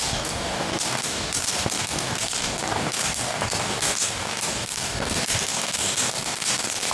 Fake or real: fake